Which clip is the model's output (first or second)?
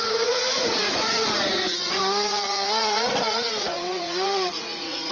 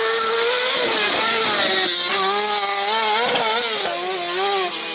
first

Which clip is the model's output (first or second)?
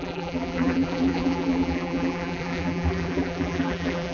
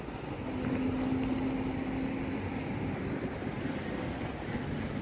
first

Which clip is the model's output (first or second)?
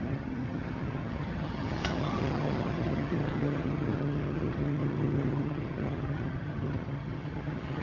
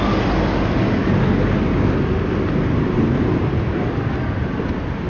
first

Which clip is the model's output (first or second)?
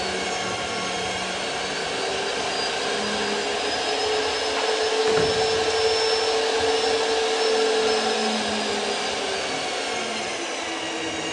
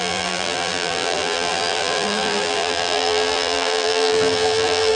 second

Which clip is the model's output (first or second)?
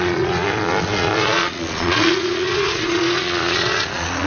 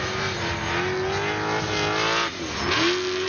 first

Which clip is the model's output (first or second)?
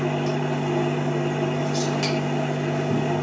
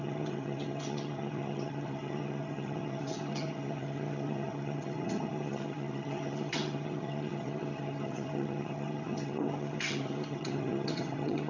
second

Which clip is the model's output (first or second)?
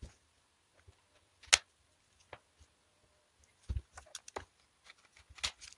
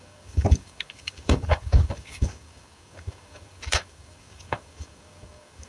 second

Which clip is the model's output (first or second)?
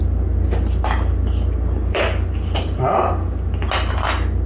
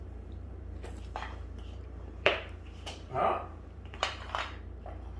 second